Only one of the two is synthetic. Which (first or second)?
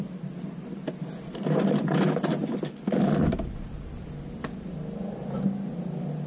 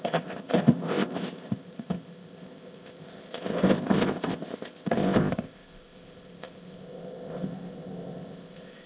second